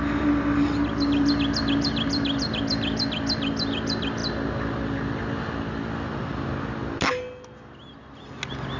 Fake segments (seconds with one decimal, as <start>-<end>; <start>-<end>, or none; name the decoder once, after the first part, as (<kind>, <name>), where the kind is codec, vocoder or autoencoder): none